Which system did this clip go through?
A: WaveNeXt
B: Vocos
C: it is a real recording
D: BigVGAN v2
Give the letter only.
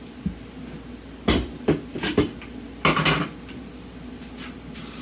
C